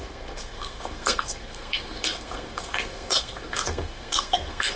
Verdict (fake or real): fake